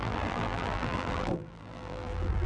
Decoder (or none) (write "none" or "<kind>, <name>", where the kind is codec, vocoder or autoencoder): vocoder, BigVGAN v2